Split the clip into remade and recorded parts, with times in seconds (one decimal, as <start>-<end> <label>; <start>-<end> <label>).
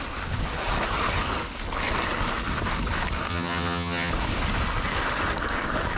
0.0-3.3 recorded; 3.3-4.1 remade; 4.1-6.0 recorded